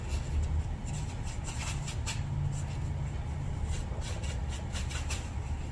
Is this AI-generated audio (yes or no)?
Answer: no